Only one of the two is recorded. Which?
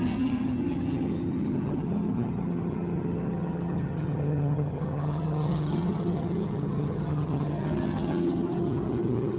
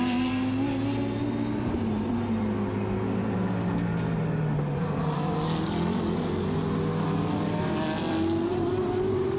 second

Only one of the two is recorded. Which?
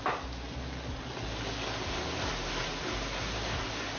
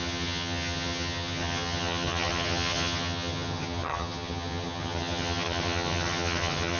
first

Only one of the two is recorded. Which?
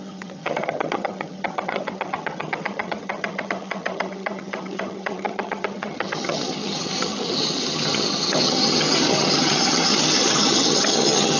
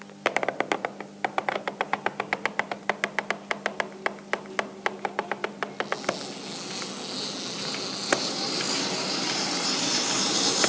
second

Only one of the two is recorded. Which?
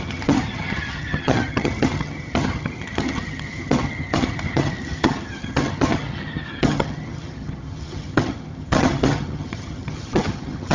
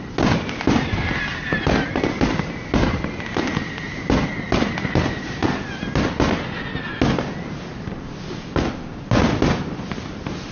second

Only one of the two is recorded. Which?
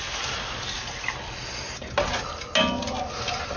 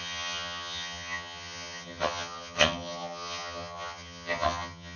first